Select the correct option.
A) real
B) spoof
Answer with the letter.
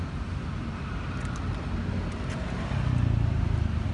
A